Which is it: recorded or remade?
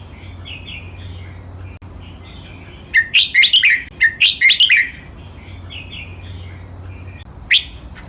recorded